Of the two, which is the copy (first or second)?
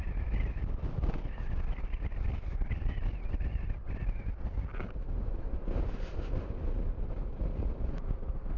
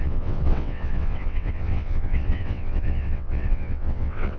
second